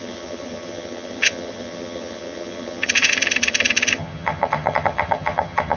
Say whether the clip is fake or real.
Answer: fake